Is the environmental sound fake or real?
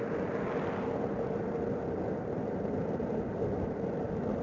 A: real